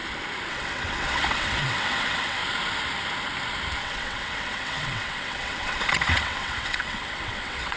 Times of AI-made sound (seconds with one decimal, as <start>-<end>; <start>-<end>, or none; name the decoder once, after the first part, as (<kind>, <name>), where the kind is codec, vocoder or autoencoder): 0.5-2.4 (vocoder, WaveNeXt); 3.8-7.8